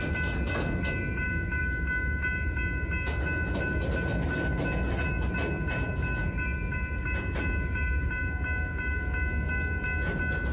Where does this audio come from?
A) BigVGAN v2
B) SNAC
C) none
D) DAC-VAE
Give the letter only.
C